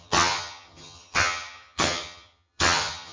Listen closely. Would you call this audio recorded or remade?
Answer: remade